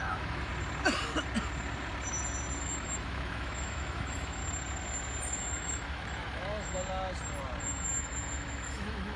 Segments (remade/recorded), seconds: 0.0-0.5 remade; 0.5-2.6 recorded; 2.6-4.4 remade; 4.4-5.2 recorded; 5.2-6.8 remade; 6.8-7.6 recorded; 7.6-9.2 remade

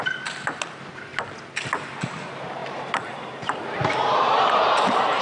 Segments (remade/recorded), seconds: 0.0-2.6 recorded; 2.6-5.2 remade

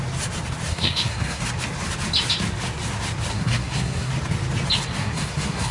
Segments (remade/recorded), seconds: 0.0-0.7 recorded; 0.7-1.4 remade; 1.4-3.3 recorded; 3.3-4.1 remade; 4.1-5.0 recorded; 5.0-5.7 remade

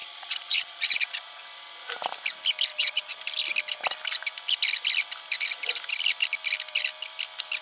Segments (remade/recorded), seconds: 0.0-1.4 remade; 1.4-2.7 recorded; 2.7-3.2 remade; 3.2-7.6 recorded

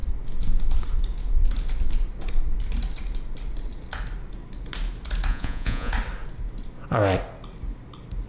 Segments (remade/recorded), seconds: 0.0-5.3 recorded; 5.3-5.9 remade; 5.9-8.3 recorded

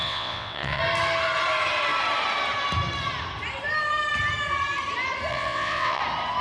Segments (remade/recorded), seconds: 0.0-0.8 remade; 0.8-5.3 recorded; 5.3-6.0 remade; 6.0-6.4 recorded

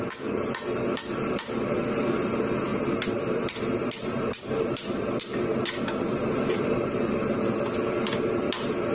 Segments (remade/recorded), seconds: 0.0-2.7 recorded; 2.7-3.4 remade; 3.4-3.8 recorded; 3.8-7.7 remade; 7.7-8.9 recorded